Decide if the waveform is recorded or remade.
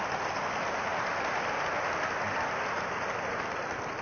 recorded